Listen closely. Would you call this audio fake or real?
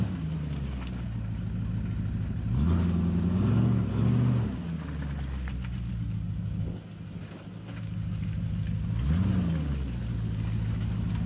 real